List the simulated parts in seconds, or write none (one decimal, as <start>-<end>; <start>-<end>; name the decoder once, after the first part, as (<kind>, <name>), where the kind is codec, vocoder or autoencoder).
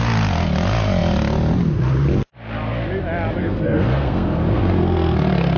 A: 3.4-5.6 (codec, SNAC)